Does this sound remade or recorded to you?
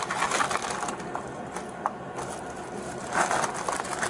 recorded